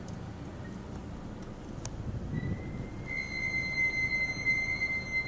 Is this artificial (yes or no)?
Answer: no